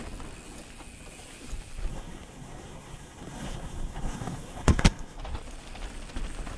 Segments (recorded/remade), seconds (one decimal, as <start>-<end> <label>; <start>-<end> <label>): 0.0-1.9 recorded; 1.9-5.2 remade; 5.2-6.6 recorded